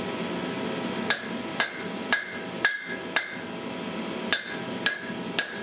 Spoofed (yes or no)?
no